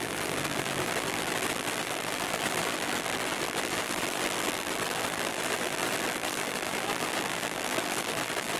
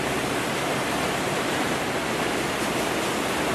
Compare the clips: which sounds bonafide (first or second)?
second